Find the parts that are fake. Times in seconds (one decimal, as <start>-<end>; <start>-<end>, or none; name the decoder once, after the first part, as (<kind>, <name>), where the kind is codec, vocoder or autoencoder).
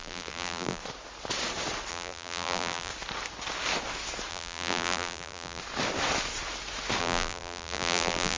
0.0-0.8 (vocoder, BigVGAN v2); 1.9-2.9; 4.3-5.6; 7.0-8.4